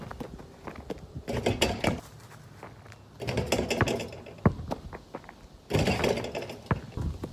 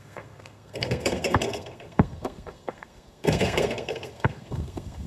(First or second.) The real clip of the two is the first